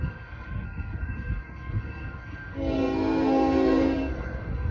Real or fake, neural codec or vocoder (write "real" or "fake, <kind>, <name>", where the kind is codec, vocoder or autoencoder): fake, codec, SNAC